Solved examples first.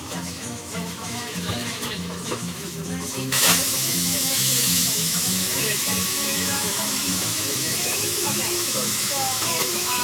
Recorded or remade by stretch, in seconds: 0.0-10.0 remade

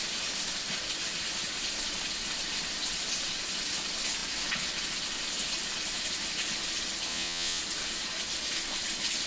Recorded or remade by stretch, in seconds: 0.0-7.1 recorded; 7.1-7.6 remade; 7.6-9.3 recorded

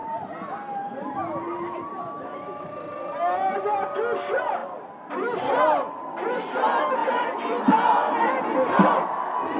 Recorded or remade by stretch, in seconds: 0.0-9.6 recorded

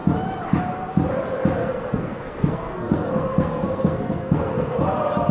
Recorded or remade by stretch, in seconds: 0.0-1.6 recorded; 1.6-4.8 remade; 4.8-5.3 recorded

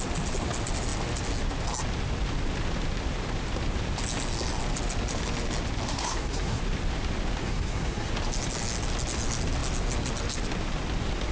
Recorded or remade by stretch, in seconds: 0.0-5.9 recorded; 5.9-6.6 remade; 6.6-7.4 recorded; 7.4-8.1 remade; 8.1-11.3 recorded

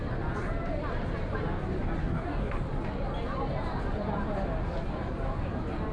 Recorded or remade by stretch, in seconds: 0.0-2.0 recorded; 2.0-2.5 remade; 2.5-5.9 recorded

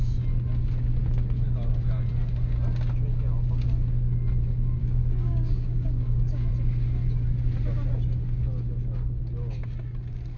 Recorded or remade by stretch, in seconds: 0.0-4.8 recorded; 4.8-6.5 remade; 6.5-10.4 recorded